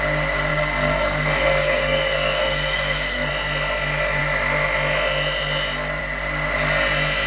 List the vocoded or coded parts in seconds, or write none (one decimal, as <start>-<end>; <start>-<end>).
0.5-3.3